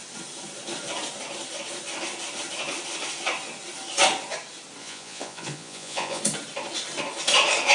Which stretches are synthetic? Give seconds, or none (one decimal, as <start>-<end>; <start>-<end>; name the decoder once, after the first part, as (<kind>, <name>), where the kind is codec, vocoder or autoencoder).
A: 4.8-6.2 (vocoder, Vocos)